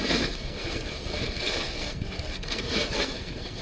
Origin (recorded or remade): remade